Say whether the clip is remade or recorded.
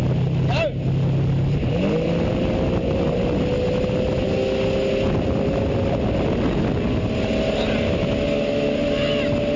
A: recorded